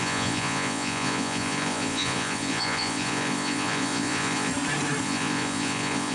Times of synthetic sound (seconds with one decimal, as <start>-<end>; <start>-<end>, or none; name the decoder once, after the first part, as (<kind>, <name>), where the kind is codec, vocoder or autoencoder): 0.0-4.5 (vocoder, Vocos); 5.0-6.1